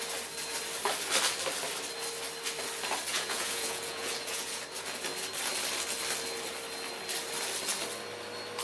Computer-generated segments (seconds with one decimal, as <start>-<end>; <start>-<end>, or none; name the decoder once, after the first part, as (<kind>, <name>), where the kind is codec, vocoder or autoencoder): 3.1-4.6 (vocoder, Vocos)